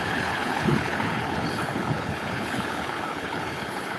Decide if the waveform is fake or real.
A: fake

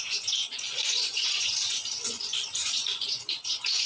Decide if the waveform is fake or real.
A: fake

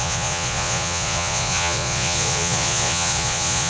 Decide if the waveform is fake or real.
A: fake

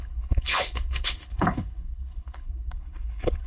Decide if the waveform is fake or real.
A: fake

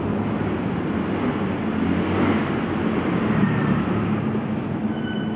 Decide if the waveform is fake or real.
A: real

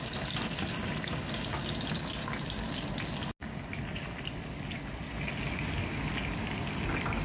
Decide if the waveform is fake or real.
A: real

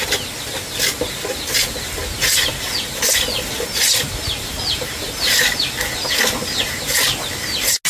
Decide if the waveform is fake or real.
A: real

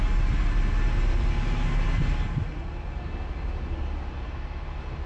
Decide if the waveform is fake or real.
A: real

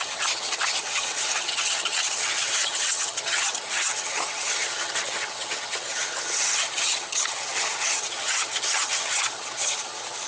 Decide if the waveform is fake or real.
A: fake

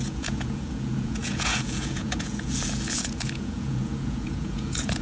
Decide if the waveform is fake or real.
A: fake